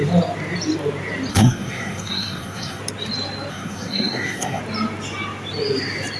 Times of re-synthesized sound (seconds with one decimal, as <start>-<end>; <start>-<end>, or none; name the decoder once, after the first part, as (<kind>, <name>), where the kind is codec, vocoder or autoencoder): 1.3-2.8 (codec, SNAC); 3.5-4.6